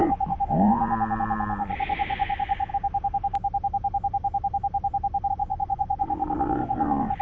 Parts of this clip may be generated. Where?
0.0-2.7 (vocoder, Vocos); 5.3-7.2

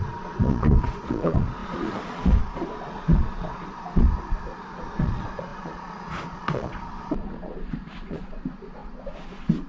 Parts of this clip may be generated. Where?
0.0-9.7 (vocoder, Vocos)

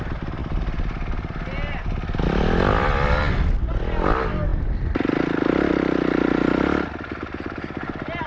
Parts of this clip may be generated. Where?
none

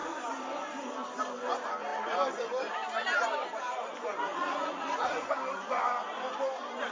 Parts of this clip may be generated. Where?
4.3-5.3 (vocoder, Vocos)

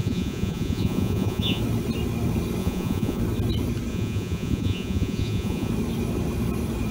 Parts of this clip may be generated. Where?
0.0-1.6 (vocoder, Vocos); 2.6-3.2; 3.9-5.7

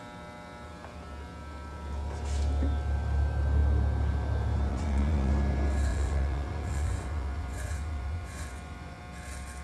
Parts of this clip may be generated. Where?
4.7-5.3 (vocoder, Vocos); 5.9-9.0

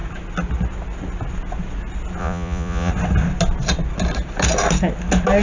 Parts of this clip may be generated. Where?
2.2-2.9 (vocoder, Vocos)

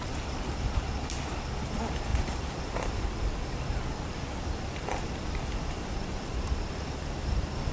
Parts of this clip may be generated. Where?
none